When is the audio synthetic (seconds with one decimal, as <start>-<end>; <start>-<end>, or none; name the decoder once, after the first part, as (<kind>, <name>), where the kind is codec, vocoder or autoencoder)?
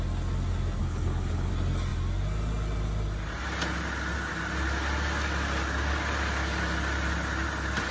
0.8-1.5 (codec, HILCodec)